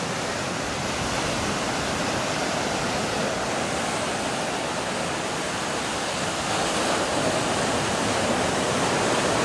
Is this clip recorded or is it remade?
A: recorded